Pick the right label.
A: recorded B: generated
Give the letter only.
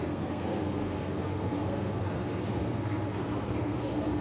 B